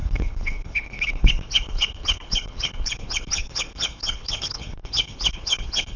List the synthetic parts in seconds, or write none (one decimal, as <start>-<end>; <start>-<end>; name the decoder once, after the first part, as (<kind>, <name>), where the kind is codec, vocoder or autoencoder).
0.0-6.0 (codec, HILCodec)